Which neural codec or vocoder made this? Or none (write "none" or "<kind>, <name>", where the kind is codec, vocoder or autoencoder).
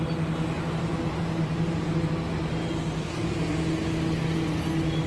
none